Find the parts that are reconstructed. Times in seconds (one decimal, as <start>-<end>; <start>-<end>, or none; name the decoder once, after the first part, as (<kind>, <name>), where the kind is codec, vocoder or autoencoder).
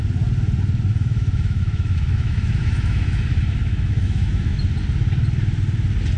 0.9-4.6 (autoencoder, DAC-VAE)